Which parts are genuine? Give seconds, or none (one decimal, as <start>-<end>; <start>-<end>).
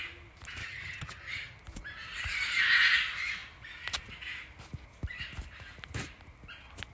0.0-0.6; 1.6-6.9